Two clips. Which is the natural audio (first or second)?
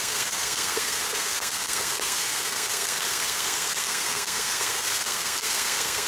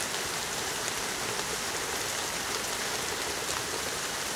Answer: second